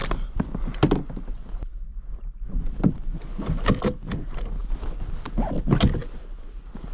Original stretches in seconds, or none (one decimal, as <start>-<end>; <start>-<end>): 0.0-4.6; 5.3-6.9

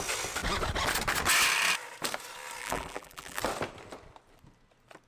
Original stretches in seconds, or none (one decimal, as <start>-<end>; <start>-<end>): 0.0-2.6; 3.4-5.1

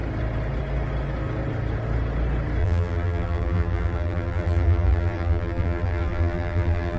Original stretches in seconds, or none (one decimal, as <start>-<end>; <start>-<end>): 0.0-2.6

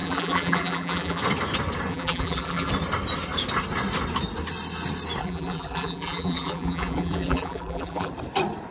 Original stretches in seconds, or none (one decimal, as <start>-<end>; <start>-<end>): 1.2-1.9; 2.7-5.2; 8.1-8.7